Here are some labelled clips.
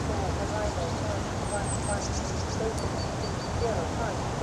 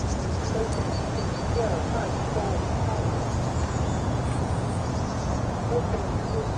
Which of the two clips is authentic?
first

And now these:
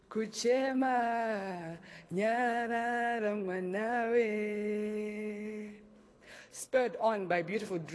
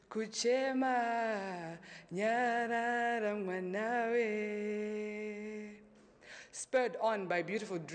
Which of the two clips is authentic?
second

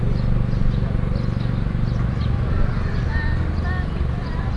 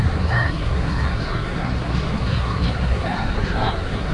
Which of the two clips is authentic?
first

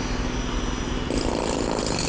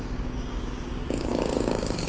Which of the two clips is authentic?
first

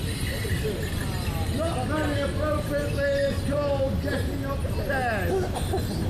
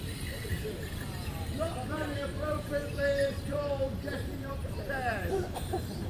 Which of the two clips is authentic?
first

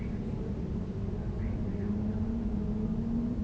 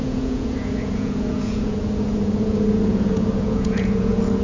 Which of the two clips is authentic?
first